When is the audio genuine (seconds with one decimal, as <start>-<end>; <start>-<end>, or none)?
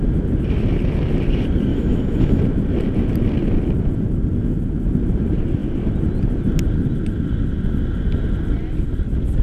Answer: 0.0-1.7; 2.4-9.4